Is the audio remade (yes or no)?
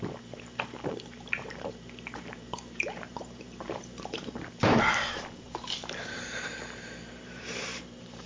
yes